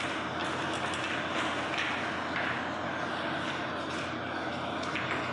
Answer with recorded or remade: recorded